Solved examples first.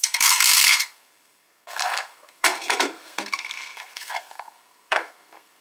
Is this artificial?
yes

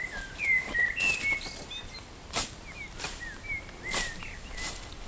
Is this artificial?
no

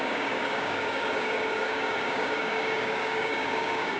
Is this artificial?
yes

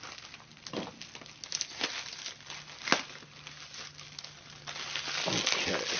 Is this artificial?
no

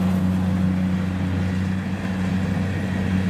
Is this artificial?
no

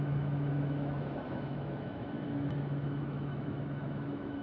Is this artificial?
yes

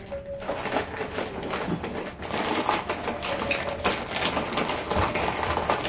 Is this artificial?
no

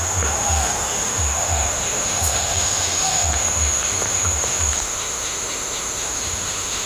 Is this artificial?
yes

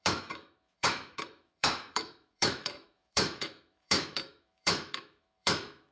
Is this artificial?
yes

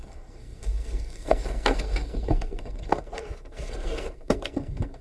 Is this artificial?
yes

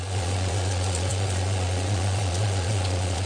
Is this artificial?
yes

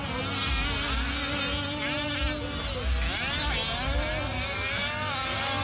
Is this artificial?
no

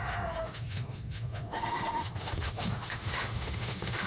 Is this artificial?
yes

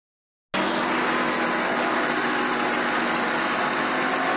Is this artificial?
no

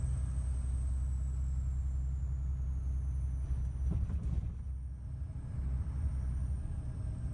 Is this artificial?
no